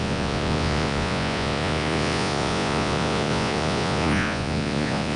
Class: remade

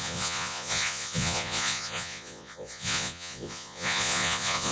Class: remade